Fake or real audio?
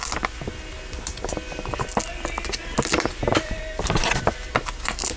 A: real